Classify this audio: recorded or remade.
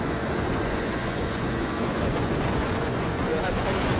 remade